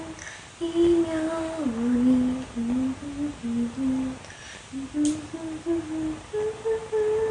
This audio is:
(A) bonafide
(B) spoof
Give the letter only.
A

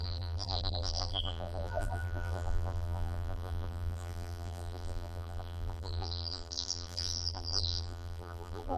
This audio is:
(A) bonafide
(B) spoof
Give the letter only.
B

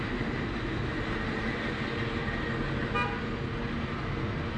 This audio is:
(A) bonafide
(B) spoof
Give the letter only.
A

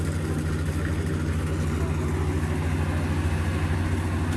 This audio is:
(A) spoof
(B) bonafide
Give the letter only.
B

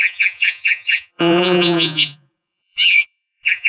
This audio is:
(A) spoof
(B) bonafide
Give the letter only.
A